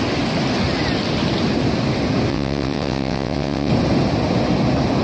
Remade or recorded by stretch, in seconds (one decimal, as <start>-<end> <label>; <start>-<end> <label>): 0.0-2.3 recorded; 2.3-3.7 remade; 3.7-5.0 recorded